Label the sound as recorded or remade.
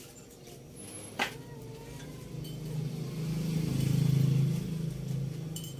recorded